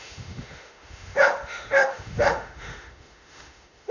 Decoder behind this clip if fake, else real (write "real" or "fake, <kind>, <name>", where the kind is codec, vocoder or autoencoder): fake, autoencoder, DAC-VAE